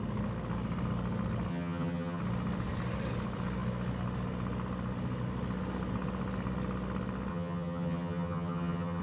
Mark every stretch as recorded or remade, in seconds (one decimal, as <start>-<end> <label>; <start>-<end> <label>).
0.0-1.5 recorded; 1.5-2.2 remade; 2.2-7.3 recorded; 7.3-9.0 remade